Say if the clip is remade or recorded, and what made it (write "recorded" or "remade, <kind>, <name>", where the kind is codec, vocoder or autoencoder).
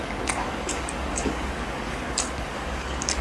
remade, codec, DAC